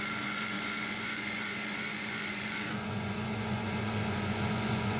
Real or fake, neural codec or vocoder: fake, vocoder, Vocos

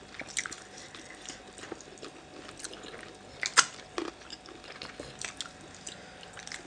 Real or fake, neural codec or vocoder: real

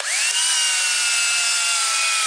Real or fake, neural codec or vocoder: real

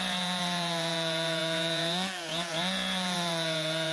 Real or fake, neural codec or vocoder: fake, vocoder, Vocos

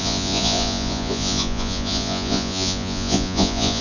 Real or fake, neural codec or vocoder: fake, vocoder, Vocos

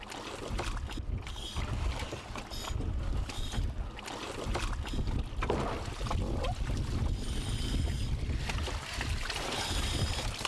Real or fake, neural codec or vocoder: real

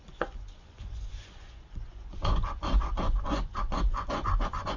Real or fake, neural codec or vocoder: fake, vocoder, Vocos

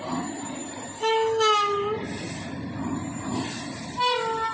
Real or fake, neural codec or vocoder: real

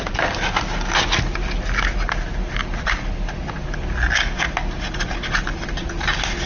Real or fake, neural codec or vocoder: real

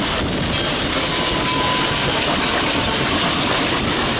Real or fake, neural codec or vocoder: real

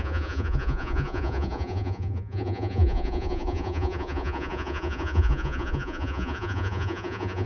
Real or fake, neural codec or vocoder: fake, vocoder, Vocos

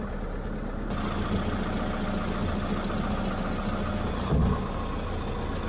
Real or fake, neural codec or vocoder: real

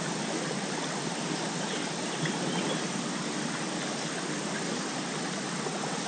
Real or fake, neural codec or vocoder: real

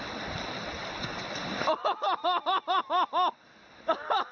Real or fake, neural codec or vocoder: real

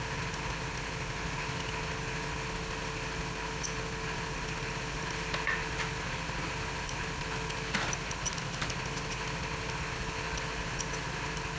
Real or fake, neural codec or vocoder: real